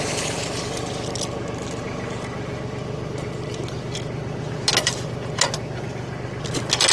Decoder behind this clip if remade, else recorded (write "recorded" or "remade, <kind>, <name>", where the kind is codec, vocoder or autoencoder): recorded